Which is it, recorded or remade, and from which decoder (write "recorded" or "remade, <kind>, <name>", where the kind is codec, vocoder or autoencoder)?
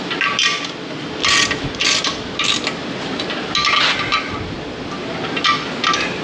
recorded